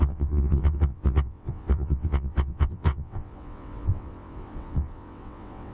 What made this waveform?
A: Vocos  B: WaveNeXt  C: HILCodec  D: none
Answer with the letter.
B